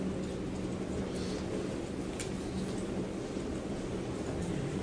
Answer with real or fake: real